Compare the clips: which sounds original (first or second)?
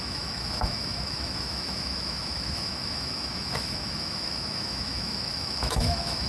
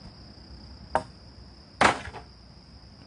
second